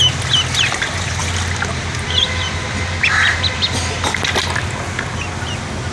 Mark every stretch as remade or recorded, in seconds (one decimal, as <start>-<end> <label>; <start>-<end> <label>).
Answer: 0.0-5.9 recorded